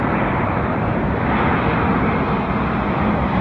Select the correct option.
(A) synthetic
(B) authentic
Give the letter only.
B